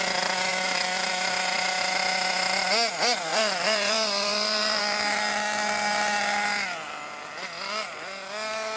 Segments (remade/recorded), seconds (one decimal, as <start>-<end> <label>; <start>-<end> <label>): 0.0-0.5 recorded; 0.5-1.1 remade; 1.1-3.3 recorded; 3.3-4.8 remade; 4.8-8.8 recorded